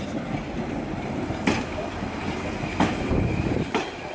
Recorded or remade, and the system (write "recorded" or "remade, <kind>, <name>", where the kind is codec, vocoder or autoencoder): remade, vocoder, BigVGAN v2